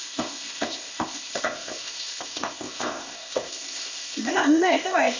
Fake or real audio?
fake